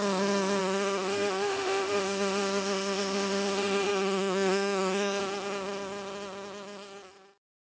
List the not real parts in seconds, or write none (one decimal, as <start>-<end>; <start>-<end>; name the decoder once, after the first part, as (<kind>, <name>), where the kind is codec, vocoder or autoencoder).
0.6-5.2 (autoencoder, DAC-VAE)